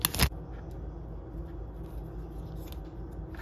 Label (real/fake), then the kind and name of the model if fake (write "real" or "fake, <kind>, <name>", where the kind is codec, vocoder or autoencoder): real